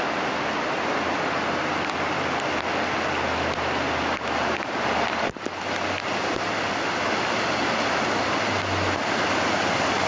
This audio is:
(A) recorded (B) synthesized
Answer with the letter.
A